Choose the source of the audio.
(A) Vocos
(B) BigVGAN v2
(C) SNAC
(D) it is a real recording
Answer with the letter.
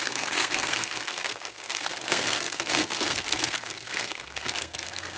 C